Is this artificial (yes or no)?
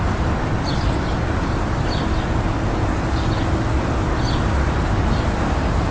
no